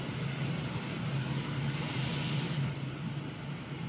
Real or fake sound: real